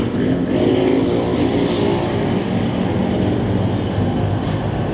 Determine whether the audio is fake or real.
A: real